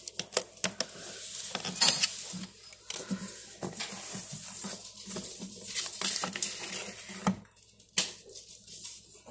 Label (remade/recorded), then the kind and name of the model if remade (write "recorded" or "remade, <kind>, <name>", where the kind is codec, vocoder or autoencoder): recorded